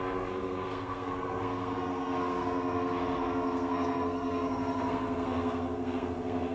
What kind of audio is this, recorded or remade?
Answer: remade